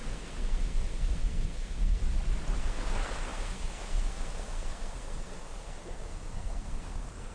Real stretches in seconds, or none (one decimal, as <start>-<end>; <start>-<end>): 2.0-2.6